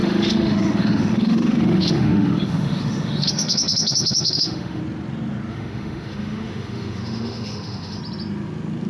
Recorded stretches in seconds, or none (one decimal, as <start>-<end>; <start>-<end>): 4.8-5.5; 8.0-8.9